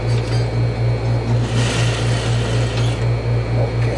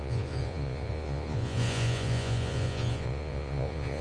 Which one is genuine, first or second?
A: first